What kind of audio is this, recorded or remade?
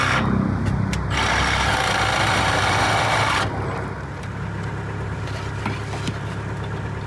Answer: recorded